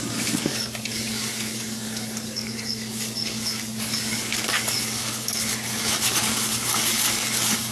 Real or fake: fake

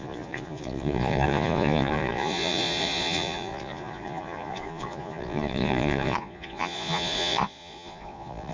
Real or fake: fake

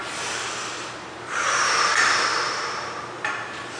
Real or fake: fake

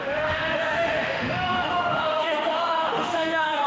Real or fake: fake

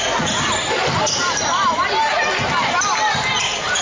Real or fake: real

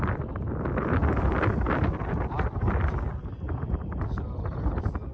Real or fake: real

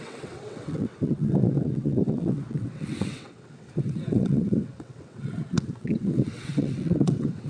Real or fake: fake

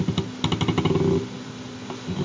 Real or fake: real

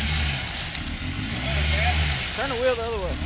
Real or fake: real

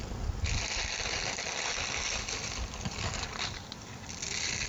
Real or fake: real